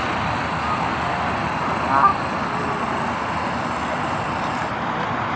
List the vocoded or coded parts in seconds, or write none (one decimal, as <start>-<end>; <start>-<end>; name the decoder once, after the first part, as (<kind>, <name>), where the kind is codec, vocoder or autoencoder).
none